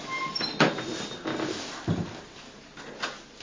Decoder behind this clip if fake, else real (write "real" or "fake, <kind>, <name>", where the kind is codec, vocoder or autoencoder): real